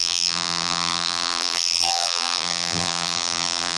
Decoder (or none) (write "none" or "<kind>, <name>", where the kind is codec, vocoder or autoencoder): vocoder, BigVGAN v2